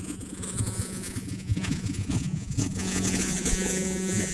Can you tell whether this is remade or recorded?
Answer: remade